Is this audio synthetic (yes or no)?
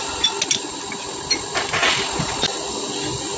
no